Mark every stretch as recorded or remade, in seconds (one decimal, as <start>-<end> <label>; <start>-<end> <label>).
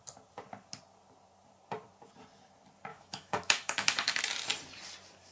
0.0-2.9 recorded; 2.9-4.2 remade; 4.2-5.3 recorded